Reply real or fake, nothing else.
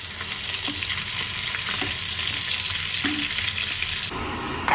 real